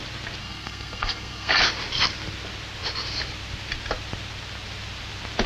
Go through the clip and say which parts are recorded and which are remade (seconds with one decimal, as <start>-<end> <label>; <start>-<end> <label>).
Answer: 0.0-0.4 recorded; 0.4-1.5 remade; 1.5-5.5 recorded